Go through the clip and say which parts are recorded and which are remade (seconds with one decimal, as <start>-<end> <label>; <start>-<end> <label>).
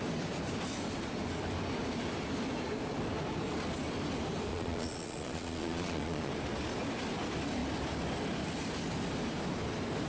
0.0-4.5 recorded; 4.5-6.3 remade; 6.3-10.1 recorded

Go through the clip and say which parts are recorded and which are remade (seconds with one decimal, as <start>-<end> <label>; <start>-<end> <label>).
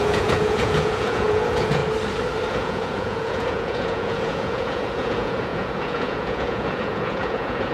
0.0-1.8 remade; 1.8-2.5 recorded; 2.5-7.7 remade